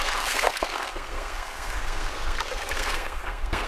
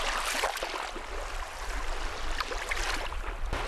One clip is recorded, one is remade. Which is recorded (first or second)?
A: second